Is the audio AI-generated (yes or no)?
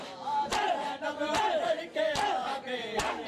no